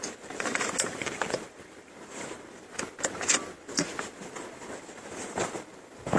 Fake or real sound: real